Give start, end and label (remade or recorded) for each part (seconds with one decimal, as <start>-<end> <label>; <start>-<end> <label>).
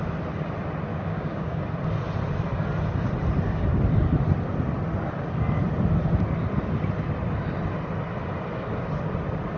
0.0-0.9 recorded; 0.9-1.6 remade; 1.6-9.6 recorded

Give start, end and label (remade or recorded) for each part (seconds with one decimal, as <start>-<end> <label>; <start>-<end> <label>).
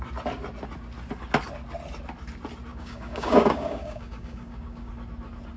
0.0-2.7 recorded; 2.7-4.9 remade; 4.9-5.6 recorded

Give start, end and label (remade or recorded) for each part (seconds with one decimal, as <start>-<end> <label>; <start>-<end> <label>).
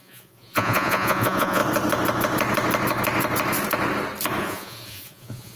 0.0-1.6 remade; 1.6-4.4 recorded; 4.4-5.6 remade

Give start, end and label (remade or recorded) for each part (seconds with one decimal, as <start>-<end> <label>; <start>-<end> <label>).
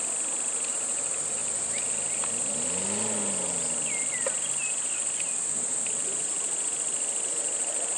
0.0-8.0 recorded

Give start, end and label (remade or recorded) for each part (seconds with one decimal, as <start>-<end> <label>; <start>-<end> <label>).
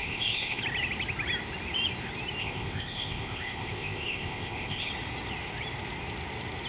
0.0-0.6 remade; 0.6-2.4 recorded; 2.4-4.9 remade; 4.9-6.7 recorded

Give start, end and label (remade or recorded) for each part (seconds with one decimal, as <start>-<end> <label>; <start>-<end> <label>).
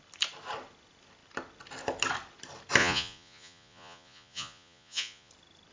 0.0-2.8 recorded; 2.8-5.3 remade; 5.3-5.7 recorded